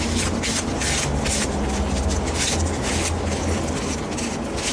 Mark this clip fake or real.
real